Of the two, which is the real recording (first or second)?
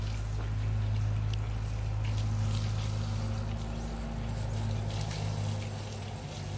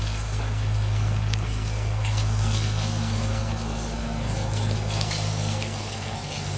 first